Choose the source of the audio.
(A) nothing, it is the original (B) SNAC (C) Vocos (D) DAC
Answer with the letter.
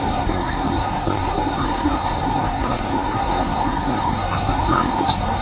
B